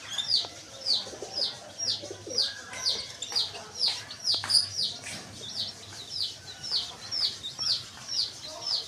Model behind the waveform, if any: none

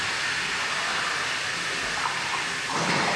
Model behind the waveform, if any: none